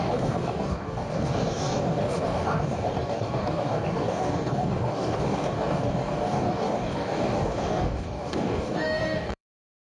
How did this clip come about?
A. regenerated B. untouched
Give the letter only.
A